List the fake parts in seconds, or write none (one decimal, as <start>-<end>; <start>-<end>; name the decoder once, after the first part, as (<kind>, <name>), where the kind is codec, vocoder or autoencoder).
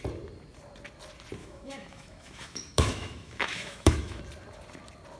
1.4-4.2 (autoencoder, DAC-VAE)